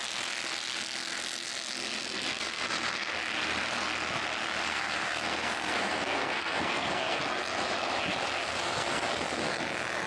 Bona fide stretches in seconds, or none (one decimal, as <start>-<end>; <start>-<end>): 0.0-2.3; 3.1-4.6; 7.2-8.5; 9.6-10.1